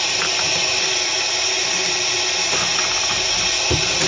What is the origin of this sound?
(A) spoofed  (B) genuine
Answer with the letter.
B